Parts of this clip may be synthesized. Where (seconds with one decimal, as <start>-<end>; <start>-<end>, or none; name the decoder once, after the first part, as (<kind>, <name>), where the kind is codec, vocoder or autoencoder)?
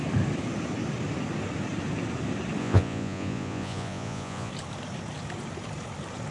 2.6-4.5 (vocoder, Vocos)